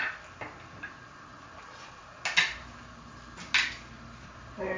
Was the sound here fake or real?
real